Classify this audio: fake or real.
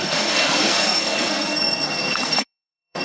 fake